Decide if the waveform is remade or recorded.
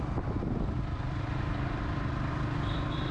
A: remade